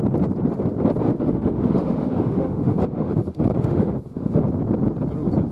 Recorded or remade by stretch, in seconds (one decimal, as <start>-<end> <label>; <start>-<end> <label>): 0.0-1.1 recorded; 1.1-4.4 remade; 4.4-5.5 recorded